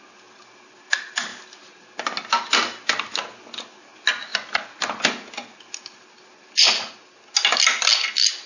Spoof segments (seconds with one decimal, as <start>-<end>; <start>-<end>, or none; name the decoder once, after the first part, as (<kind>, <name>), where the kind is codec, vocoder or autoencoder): none

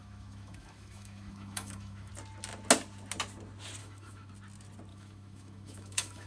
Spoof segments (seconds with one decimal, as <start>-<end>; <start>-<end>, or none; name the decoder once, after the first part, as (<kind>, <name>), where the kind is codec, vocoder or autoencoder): 0.0-2.1 (autoencoder, DAC-VAE); 3.8-4.3; 4.9-6.3

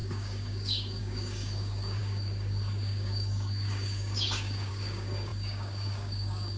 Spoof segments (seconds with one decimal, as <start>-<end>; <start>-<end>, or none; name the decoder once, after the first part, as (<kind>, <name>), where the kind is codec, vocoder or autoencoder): 0.0-6.6 (codec, DAC)

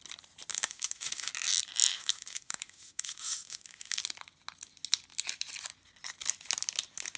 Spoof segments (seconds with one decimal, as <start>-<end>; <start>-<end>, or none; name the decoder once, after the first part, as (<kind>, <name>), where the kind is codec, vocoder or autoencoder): 0.5-1.3 (autoencoder, DAC-VAE); 1.9-4.0

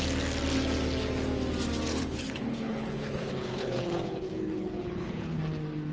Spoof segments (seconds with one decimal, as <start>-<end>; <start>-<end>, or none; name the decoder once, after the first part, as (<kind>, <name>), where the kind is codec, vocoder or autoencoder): 1.9-5.4 (codec, HILCodec)